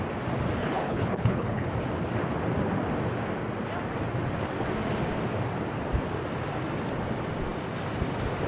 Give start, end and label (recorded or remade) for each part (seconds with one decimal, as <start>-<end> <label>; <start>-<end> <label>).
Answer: 0.0-0.6 recorded; 0.6-1.7 remade; 1.7-8.5 recorded